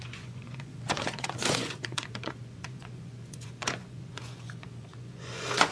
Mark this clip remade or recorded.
remade